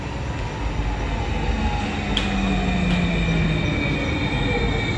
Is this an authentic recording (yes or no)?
yes